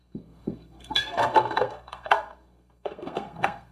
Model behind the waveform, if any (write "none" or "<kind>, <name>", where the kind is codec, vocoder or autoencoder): codec, SNAC